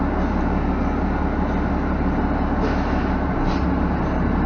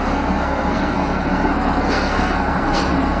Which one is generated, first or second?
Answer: second